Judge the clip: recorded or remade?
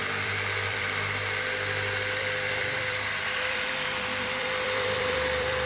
remade